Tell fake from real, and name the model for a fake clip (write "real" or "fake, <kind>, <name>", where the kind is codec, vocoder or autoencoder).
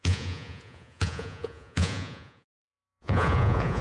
fake, vocoder, Vocos